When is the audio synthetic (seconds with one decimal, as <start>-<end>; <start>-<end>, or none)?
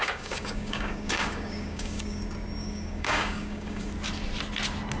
0.0-2.2; 2.6-3.9